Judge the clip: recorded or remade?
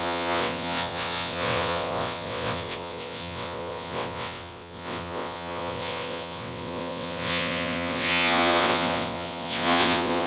remade